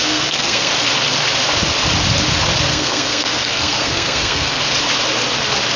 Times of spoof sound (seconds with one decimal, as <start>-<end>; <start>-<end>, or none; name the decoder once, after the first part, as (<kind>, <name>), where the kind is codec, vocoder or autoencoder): 0.0-0.7 (codec, SNAC); 2.7-4.6